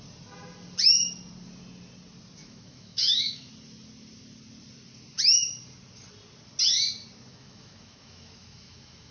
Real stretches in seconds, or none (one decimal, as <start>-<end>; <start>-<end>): 0.0-2.4; 3.5-7.3